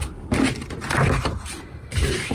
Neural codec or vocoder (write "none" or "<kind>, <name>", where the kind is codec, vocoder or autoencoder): none